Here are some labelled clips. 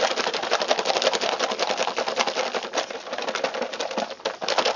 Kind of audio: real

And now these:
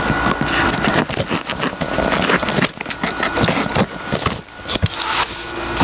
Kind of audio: real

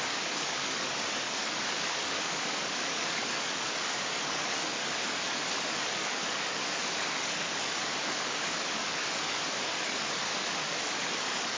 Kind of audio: fake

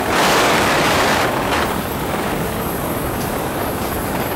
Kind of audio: fake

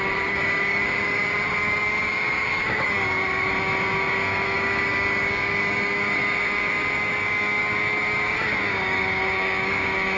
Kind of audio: fake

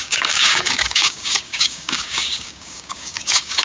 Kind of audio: fake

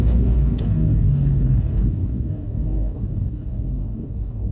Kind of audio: fake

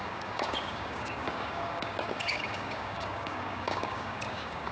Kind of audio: fake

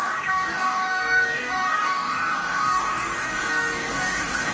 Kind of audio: fake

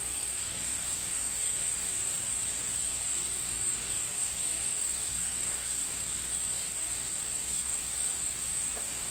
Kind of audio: fake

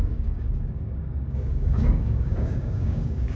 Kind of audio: fake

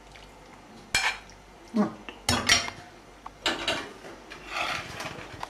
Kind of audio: real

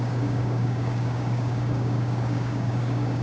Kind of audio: fake